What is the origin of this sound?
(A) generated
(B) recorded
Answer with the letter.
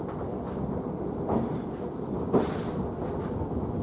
B